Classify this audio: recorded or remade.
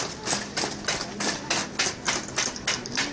recorded